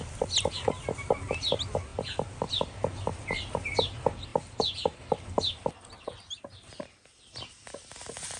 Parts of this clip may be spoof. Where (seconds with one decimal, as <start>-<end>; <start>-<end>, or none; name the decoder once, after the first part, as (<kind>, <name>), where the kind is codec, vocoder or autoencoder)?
none